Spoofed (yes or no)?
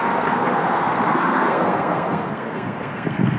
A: yes